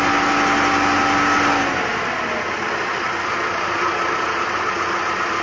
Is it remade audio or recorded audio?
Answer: recorded